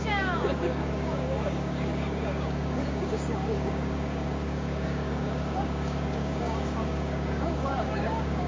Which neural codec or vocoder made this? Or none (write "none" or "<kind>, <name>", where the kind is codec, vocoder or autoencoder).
codec, DAC